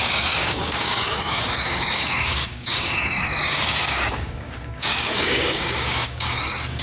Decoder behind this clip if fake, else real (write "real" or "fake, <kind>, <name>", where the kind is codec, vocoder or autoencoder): fake, codec, DAC